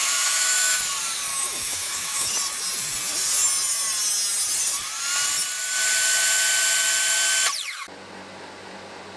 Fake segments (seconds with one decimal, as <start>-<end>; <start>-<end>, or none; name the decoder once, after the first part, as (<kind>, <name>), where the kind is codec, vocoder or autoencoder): 0.0-0.8 (autoencoder, DAC-VAE); 1.3-2.3